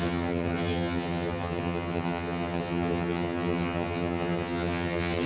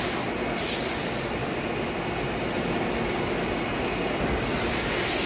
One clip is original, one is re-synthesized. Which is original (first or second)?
second